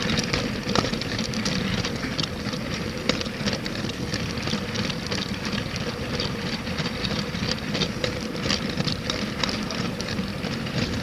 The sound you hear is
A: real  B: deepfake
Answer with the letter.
B